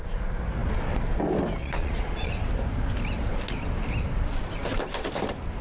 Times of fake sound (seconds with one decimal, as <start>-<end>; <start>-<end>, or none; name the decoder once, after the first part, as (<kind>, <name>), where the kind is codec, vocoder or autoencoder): 1.6-2.3 (vocoder, Vocos)